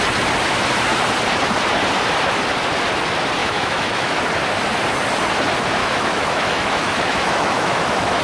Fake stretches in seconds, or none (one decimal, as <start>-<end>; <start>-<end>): 3.4-4.2; 5.8-8.2